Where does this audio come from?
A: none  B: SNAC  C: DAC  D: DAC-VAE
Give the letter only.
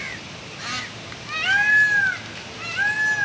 A